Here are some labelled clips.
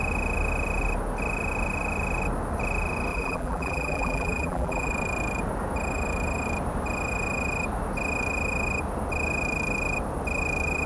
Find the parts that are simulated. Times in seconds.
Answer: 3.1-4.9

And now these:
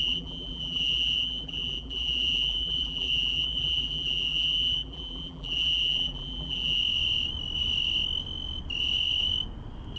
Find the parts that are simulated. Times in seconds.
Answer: 0.0-6.8